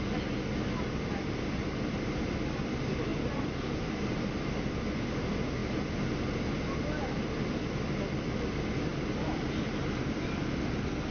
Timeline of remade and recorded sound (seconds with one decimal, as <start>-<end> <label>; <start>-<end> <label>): 0.0-3.1 recorded; 3.1-4.7 remade; 4.7-8.9 recorded; 8.9-11.1 remade